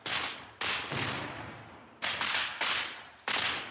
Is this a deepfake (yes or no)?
no